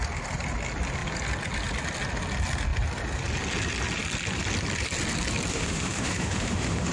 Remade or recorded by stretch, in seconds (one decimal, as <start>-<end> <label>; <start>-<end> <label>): 0.0-5.5 recorded; 5.5-6.9 remade